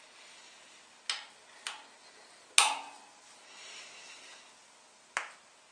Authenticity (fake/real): real